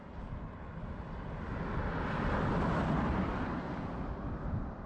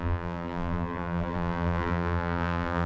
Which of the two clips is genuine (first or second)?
first